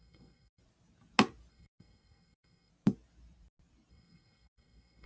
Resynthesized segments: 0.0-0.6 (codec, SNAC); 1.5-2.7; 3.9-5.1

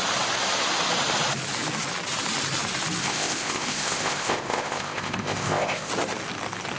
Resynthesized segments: 3.0-5.9 (codec, ZipCodec)

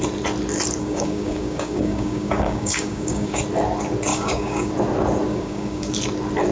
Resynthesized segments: 0.8-3.4 (codec, DAC); 4.1-4.7; 5.3-5.9

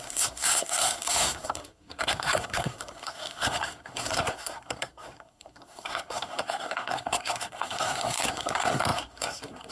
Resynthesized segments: 0.0-9.7 (codec, SNAC)

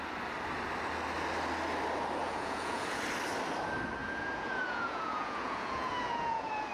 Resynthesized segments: 2.2-3.0 (vocoder, Vocos); 4.0-6.7

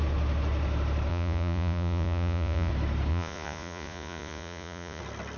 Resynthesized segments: 1.1-2.7 (vocoder, Vocos); 3.1-5.0